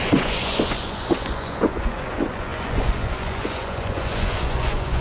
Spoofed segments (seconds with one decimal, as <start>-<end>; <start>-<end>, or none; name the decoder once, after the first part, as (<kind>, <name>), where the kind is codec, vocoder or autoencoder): 0.0-5.0 (vocoder, Vocos)